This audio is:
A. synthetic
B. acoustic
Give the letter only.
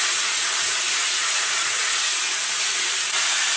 A